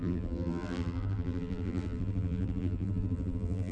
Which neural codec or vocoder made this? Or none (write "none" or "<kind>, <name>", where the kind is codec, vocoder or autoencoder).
vocoder, BigVGAN v2